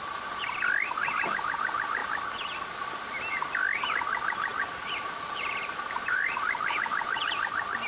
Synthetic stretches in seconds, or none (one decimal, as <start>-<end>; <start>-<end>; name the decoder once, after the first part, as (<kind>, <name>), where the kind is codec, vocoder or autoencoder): 4.5-7.5 (vocoder, BigVGAN v2)